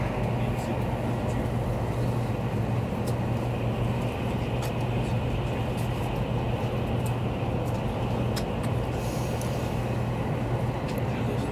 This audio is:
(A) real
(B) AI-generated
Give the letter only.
A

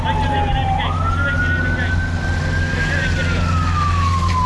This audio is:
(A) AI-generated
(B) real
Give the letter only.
B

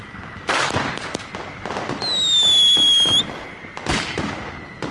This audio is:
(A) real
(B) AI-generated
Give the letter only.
A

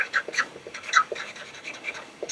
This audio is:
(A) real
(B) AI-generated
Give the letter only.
B